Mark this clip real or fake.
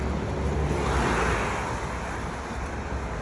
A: real